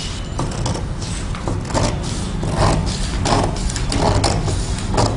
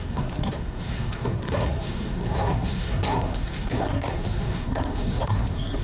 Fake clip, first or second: second